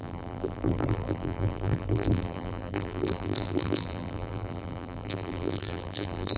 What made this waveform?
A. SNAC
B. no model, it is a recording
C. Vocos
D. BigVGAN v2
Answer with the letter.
D